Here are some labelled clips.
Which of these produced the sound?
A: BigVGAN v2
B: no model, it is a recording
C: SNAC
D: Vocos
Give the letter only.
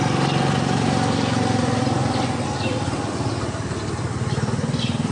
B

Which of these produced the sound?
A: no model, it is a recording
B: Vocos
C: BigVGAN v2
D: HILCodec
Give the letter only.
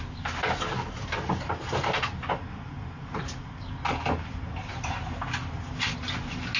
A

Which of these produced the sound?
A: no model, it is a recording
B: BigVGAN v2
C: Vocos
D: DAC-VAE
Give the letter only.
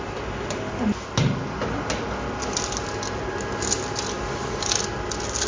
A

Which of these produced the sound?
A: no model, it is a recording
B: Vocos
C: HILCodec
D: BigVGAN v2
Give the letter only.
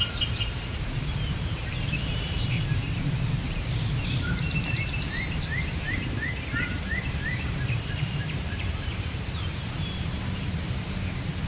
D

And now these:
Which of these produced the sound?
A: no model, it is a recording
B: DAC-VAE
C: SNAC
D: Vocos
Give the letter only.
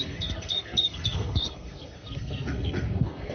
C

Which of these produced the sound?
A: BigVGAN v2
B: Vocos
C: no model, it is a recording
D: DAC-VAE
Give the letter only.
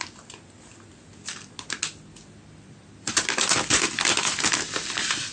C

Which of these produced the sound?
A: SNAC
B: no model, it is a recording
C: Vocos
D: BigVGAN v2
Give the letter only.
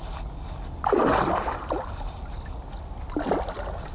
B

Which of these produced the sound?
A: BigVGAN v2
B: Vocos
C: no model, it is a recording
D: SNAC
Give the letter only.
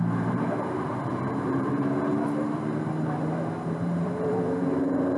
A